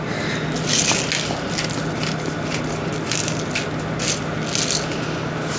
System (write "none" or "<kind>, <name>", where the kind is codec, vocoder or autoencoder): none